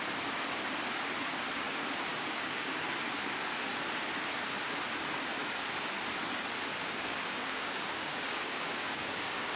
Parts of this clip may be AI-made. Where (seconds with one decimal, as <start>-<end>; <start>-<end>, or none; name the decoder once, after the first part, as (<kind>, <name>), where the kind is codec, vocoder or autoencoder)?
2.1-2.8 (codec, DAC); 6.7-9.6